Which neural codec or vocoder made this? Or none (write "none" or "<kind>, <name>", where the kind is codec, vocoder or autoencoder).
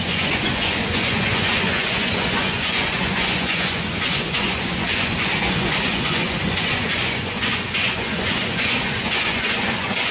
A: vocoder, Vocos